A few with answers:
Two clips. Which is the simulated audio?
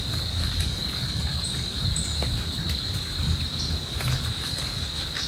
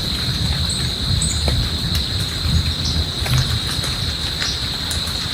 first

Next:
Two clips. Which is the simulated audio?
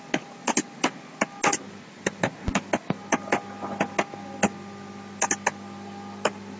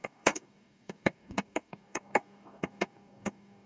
second